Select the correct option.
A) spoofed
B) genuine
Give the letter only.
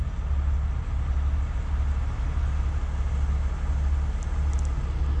B